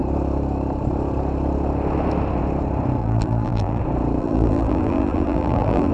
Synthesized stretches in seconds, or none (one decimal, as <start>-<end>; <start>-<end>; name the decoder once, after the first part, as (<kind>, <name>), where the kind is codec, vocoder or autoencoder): 3.0-3.8 (vocoder, BigVGAN v2); 4.2-5.9